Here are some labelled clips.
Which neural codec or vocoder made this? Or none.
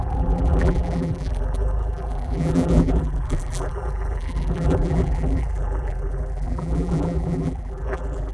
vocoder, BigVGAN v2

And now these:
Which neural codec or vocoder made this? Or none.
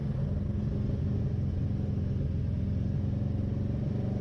none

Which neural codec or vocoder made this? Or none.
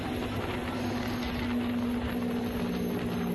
none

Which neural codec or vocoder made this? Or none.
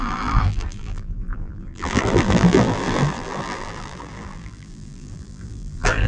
vocoder, BigVGAN v2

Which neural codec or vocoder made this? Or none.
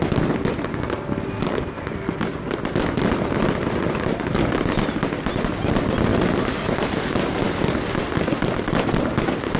none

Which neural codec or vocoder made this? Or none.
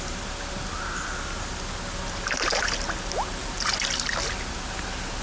none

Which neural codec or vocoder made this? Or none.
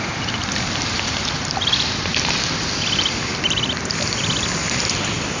vocoder, BigVGAN v2